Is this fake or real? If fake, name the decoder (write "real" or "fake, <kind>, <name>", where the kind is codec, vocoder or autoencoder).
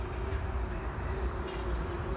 real